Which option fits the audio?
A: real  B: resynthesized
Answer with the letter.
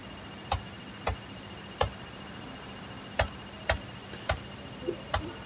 A